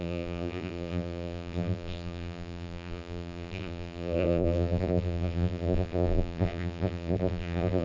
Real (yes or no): no